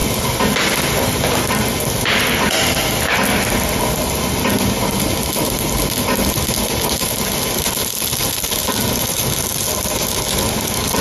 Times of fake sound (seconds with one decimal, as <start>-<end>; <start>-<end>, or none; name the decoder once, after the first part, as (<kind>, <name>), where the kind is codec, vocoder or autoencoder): none